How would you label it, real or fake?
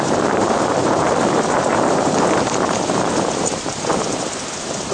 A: fake